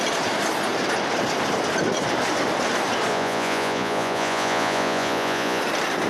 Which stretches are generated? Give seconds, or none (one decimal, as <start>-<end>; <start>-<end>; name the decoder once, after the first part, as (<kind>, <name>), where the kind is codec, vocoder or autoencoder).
3.1-5.6 (vocoder, Vocos)